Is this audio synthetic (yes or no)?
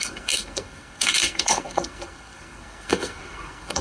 yes